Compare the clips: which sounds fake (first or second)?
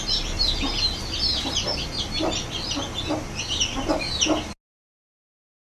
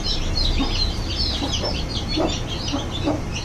second